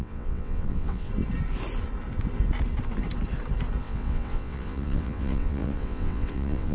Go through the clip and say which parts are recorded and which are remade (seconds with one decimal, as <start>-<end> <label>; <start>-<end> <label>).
0.0-1.1 remade; 1.1-3.8 recorded; 3.8-6.7 remade